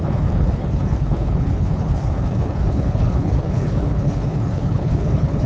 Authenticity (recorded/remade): remade